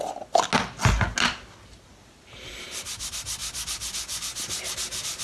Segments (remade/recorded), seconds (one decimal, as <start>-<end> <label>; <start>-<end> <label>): 0.0-5.2 recorded